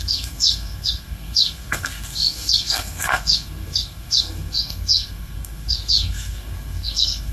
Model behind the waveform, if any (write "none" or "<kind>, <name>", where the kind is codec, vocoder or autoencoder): codec, SNAC